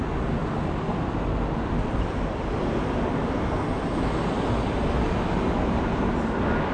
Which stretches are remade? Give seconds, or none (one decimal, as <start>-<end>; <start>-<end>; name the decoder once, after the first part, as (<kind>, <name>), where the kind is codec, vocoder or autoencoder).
none